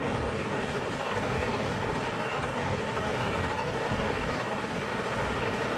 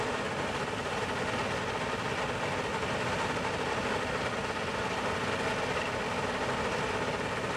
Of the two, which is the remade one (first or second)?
first